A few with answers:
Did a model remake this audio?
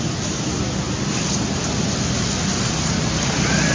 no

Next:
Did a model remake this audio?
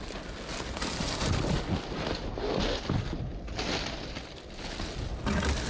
no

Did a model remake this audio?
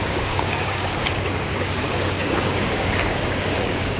yes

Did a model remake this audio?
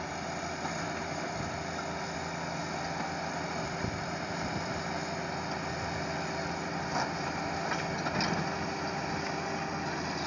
no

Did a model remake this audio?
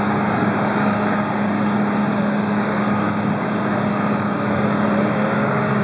yes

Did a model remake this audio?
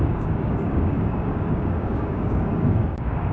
yes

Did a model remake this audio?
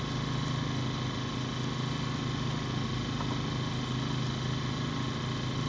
no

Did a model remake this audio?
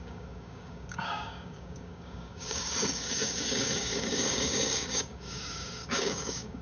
yes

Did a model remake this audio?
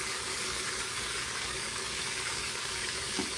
yes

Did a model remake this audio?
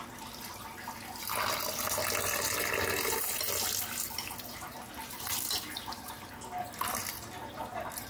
no